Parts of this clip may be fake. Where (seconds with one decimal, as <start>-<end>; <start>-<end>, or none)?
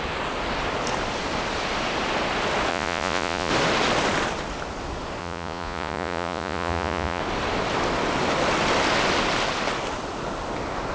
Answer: 2.7-3.5; 5.2-7.2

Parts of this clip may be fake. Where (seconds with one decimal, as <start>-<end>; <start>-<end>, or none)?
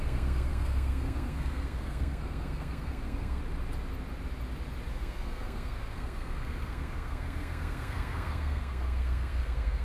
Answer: 0.0-3.4; 4.9-9.8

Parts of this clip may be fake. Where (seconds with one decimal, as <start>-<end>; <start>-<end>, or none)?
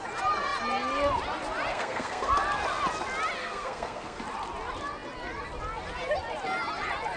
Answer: 1.7-2.3; 3.4-4.2